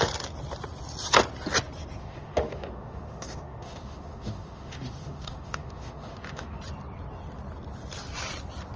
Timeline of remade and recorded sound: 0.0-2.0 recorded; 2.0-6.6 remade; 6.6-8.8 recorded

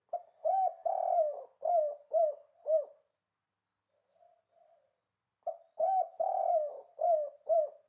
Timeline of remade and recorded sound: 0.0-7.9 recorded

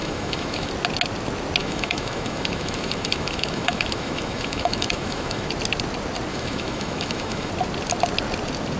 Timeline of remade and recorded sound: 0.0-0.7 remade; 0.7-1.6 recorded; 1.6-5.5 remade; 5.5-6.3 recorded; 6.3-7.5 remade; 7.5-8.8 recorded